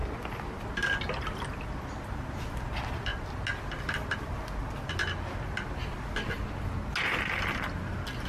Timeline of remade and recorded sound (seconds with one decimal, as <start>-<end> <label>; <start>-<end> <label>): 0.0-8.3 recorded